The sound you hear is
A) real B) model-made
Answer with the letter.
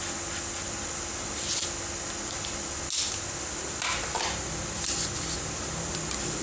A